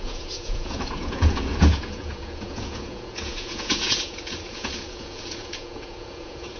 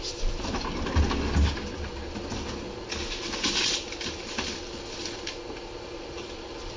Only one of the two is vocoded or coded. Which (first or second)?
first